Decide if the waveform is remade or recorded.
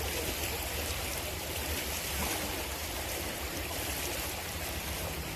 remade